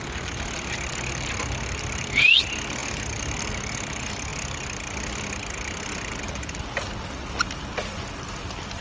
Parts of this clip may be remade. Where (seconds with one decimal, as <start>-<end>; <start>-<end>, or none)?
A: none